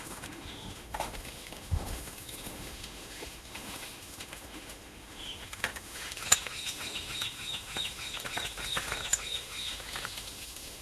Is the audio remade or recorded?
remade